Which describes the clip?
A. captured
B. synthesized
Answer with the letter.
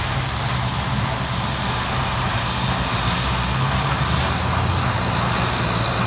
A